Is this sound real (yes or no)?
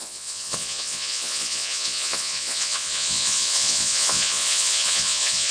no